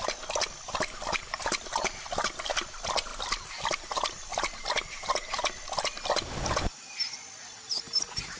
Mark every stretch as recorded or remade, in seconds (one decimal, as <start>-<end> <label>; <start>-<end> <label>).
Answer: 0.0-8.4 recorded